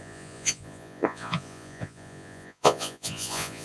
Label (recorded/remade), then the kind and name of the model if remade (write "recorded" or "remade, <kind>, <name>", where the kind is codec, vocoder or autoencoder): remade, vocoder, Vocos